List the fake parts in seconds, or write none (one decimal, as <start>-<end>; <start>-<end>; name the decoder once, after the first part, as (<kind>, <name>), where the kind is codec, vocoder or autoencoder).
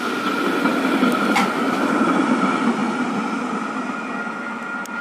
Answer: none